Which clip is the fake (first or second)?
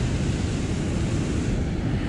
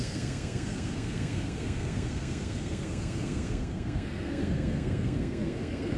second